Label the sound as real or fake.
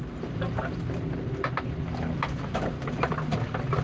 real